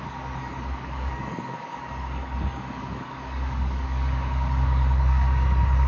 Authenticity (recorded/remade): remade